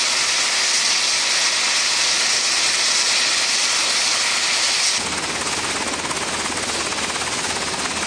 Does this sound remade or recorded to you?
recorded